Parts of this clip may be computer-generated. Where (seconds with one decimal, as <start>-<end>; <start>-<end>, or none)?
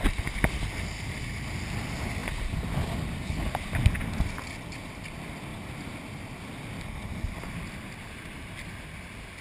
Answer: none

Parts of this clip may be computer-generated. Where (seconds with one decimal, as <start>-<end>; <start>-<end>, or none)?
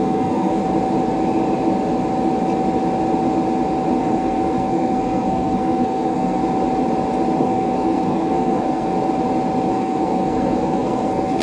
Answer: 0.0-0.6; 4.0-6.4; 7.4-8.9; 9.7-11.4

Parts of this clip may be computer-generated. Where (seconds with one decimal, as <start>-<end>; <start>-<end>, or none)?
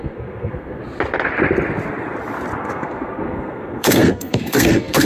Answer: 0.0-0.8; 2.6-5.0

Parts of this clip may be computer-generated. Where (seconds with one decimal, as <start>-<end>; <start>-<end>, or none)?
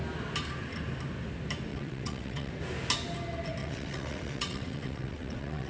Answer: 1.7-2.5; 3.6-5.7